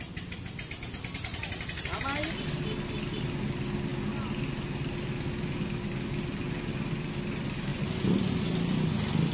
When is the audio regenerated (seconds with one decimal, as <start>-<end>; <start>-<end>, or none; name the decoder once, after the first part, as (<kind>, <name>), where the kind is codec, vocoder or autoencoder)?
none